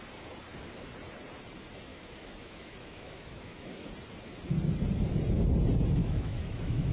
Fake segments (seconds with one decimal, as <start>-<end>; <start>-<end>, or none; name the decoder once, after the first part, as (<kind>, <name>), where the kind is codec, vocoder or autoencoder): 1.9-3.9 (autoencoder, DAC-VAE); 6.0-6.9